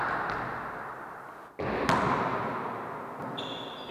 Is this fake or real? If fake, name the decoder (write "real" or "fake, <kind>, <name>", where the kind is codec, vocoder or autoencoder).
real